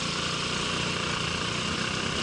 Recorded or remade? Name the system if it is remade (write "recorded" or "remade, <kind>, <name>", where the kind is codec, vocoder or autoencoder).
recorded